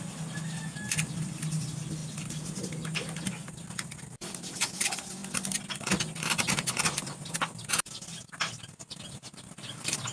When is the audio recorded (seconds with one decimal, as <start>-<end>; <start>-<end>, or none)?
0.0-10.1